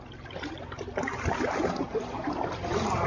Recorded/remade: recorded